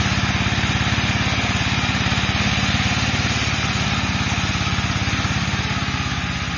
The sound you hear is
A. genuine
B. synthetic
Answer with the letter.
A